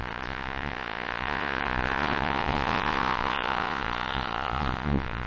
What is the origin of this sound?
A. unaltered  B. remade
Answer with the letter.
B